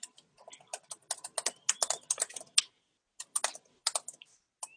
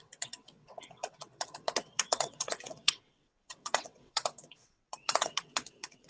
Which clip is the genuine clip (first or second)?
first